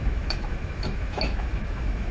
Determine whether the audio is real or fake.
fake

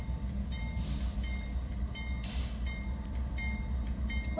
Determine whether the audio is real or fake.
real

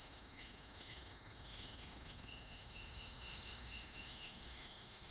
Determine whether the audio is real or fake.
fake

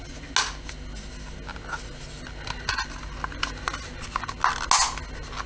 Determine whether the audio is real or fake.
real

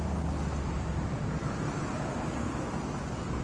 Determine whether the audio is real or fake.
real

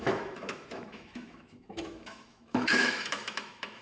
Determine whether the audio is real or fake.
fake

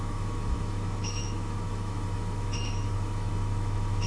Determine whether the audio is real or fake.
fake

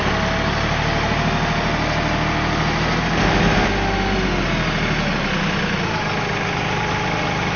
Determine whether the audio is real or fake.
real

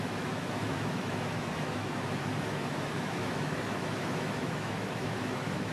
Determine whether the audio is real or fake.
fake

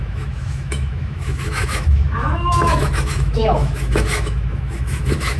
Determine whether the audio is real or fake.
fake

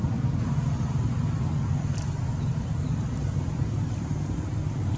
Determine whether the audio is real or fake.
real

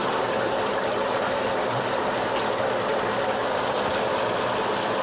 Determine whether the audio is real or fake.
real